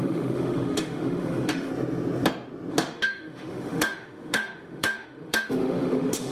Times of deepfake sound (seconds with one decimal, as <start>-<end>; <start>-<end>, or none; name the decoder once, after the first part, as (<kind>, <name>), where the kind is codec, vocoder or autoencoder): 0.0-1.7 (autoencoder, DAC-VAE); 2.7-6.3